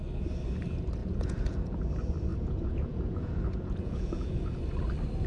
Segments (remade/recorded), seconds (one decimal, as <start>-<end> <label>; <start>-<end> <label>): 0.0-1.0 recorded; 1.0-1.8 remade; 1.8-2.3 recorded; 2.3-4.6 remade; 4.6-5.3 recorded